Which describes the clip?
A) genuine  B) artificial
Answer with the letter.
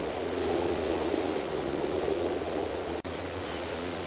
B